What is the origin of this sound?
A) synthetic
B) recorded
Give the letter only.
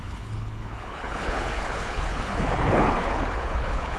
A